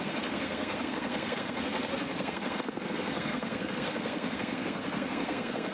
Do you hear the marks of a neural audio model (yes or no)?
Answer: yes